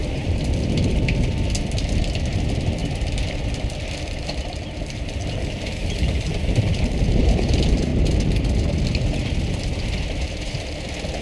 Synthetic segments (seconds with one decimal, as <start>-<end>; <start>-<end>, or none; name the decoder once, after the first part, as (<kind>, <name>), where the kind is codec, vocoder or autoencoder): 4.8-7.9 (vocoder, BigVGAN v2)